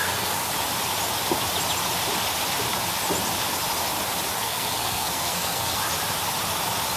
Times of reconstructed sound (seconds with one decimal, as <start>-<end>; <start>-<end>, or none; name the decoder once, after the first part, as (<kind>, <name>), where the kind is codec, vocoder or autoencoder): 0.0-0.4 (codec, SNAC); 4.4-5.8